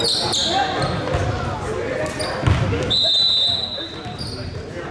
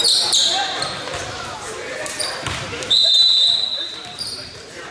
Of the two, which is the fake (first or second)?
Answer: second